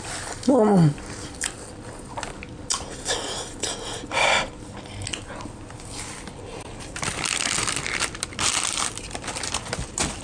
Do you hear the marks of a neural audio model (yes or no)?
no